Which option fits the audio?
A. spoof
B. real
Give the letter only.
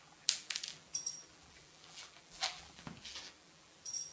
A